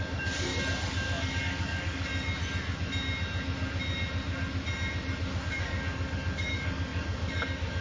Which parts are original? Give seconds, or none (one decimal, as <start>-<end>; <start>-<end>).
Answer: 0.5-1.4; 2.1-5.4

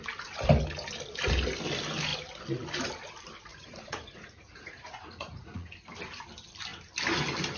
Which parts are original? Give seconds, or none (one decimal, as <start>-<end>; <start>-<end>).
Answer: 0.0-3.5; 5.7-7.6